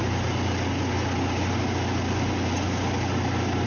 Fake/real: real